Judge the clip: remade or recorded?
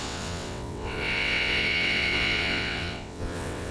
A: remade